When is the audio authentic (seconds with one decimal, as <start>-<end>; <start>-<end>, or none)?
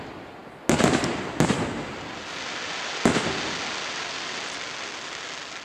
0.0-5.6